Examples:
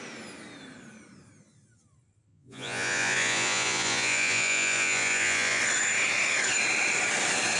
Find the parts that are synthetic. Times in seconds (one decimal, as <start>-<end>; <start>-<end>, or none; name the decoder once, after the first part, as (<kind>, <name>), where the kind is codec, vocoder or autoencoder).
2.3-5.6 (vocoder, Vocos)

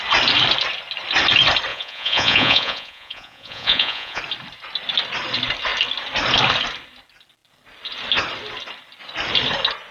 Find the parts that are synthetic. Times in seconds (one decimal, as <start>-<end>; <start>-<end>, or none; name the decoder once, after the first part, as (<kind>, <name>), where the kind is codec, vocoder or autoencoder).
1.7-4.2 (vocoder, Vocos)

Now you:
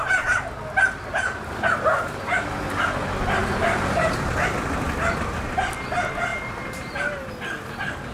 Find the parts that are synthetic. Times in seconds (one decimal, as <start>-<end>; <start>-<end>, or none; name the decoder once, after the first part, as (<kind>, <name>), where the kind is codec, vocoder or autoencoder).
3.4-4.3 (vocoder, BigVGAN v2)

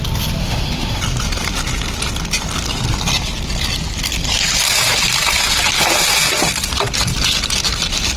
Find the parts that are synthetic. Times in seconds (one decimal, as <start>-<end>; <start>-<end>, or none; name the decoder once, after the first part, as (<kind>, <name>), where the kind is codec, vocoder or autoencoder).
0.4-1.0 (autoencoder, DAC-VAE)